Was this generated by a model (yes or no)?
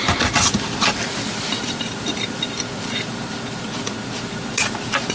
yes